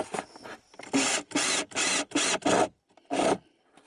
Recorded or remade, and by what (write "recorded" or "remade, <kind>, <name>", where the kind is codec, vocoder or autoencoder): recorded